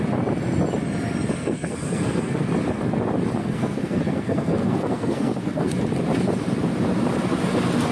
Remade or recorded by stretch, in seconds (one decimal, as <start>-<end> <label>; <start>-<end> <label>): 0.0-1.3 recorded; 1.3-2.5 remade; 2.5-3.4 recorded; 3.4-5.7 remade; 5.7-7.9 recorded